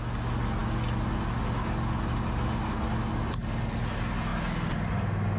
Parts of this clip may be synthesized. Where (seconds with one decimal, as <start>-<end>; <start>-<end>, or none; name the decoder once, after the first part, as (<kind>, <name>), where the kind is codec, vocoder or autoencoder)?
none